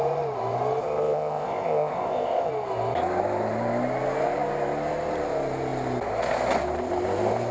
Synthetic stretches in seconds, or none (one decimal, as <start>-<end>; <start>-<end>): 0.8-2.5